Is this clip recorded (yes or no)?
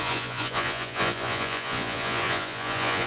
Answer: no